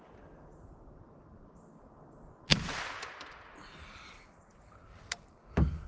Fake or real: real